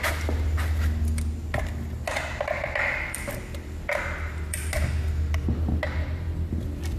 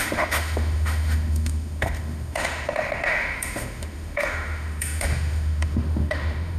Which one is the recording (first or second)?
first